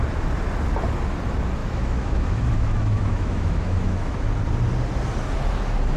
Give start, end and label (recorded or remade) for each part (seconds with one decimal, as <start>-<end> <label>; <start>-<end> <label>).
0.0-1.6 recorded; 1.6-4.1 remade; 4.1-6.0 recorded